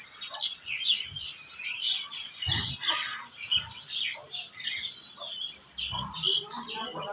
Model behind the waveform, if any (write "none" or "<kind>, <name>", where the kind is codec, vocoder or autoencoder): none